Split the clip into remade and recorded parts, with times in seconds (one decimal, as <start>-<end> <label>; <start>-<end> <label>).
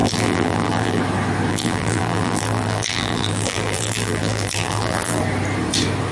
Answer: 0.0-1.0 remade; 1.0-1.5 recorded; 1.5-5.2 remade; 5.2-6.1 recorded